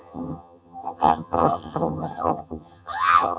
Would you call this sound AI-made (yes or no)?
yes